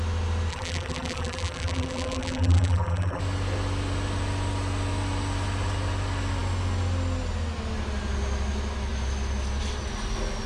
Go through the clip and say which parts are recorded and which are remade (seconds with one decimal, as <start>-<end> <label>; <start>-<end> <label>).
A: 0.0-0.5 recorded; 0.5-3.2 remade; 3.2-10.5 recorded